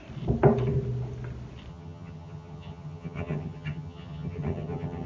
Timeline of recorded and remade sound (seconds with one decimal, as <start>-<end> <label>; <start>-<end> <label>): 0.0-1.7 recorded; 1.7-5.1 remade